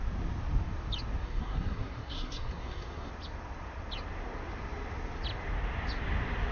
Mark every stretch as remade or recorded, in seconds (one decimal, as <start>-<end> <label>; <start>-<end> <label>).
0.0-1.2 recorded; 1.2-3.1 remade; 3.1-6.5 recorded